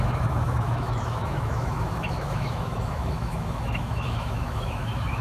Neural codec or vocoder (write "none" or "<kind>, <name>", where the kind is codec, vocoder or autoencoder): autoencoder, DAC-VAE